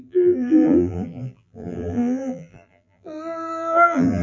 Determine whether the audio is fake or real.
fake